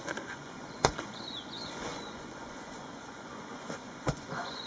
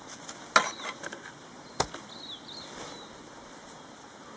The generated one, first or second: first